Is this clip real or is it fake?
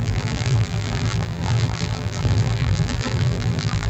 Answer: fake